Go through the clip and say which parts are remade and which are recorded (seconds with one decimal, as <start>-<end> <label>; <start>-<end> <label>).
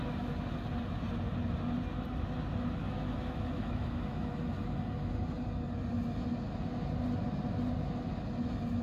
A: 0.0-2.8 recorded; 2.8-4.4 remade; 4.4-8.8 recorded